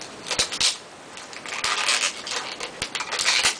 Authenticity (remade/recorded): recorded